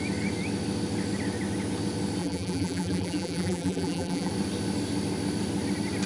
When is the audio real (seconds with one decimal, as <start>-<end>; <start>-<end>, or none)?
0.0-2.2; 4.3-6.1